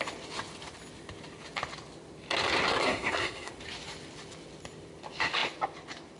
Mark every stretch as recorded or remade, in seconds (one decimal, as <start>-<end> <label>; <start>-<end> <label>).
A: 0.0-2.7 recorded; 2.7-3.5 remade; 3.5-6.2 recorded